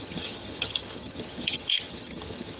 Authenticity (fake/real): fake